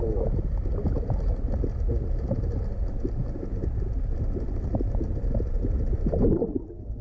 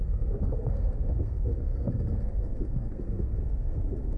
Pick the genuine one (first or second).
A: first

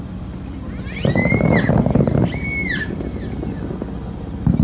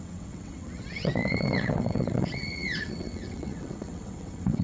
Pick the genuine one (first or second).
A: first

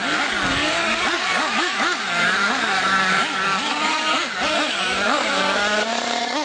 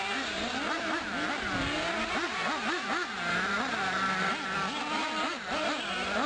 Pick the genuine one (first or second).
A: second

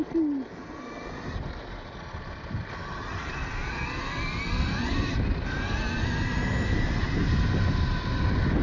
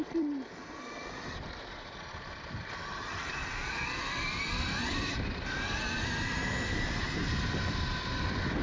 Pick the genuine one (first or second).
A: first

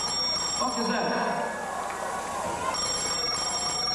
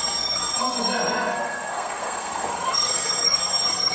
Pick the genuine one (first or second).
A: first